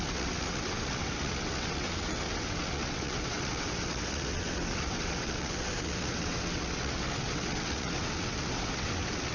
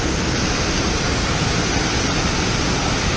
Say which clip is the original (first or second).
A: second